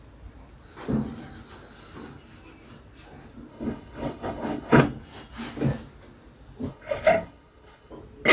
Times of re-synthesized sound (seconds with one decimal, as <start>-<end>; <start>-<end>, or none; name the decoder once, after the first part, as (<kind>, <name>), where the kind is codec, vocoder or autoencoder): 3.5-4.8 (codec, HILCodec); 6.7-7.9